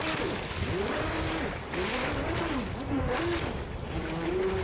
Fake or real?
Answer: real